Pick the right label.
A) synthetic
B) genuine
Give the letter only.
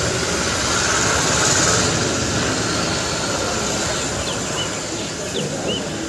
B